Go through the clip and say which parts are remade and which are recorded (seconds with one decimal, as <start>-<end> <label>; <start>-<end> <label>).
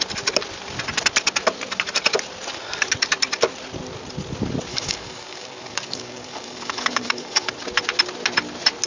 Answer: 0.0-4.7 recorded; 4.7-7.5 remade; 7.5-8.9 recorded